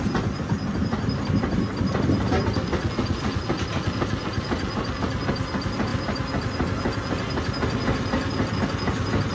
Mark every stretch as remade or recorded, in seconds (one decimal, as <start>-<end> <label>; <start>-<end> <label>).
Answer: 0.0-9.3 recorded